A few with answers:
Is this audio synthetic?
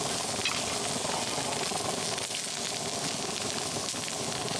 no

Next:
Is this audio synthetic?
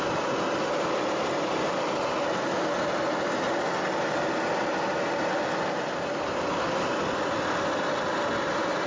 no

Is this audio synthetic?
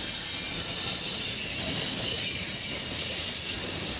no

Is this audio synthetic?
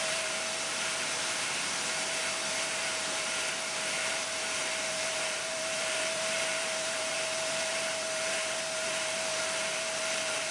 yes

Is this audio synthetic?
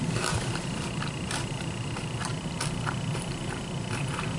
yes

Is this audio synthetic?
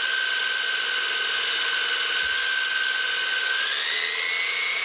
no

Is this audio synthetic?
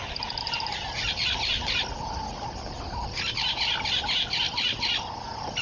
no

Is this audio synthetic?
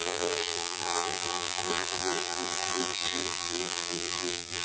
yes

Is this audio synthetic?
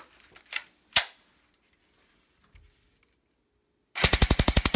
no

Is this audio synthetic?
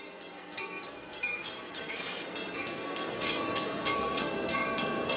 yes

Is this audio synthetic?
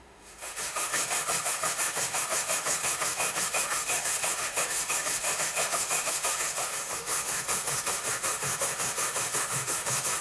yes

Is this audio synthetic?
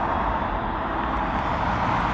no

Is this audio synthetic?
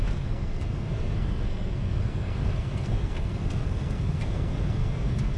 yes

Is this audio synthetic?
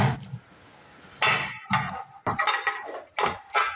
no